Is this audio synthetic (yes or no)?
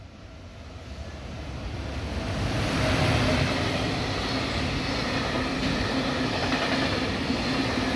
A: no